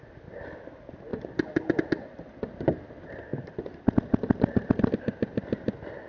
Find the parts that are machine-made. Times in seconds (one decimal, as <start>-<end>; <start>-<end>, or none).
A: none